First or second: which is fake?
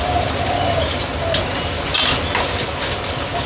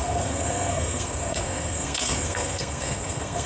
second